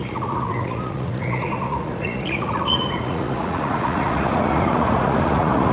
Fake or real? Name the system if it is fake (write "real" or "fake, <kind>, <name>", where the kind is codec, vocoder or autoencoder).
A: fake, vocoder, Vocos